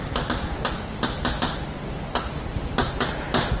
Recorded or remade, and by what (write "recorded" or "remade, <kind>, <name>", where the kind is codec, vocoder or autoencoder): recorded